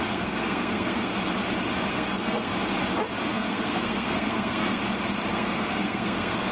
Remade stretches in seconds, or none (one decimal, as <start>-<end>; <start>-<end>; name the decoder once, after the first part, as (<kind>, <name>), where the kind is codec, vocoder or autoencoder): 0.0-1.1 (codec, SNAC); 1.9-2.5; 3.3-4.8; 5.3-6.5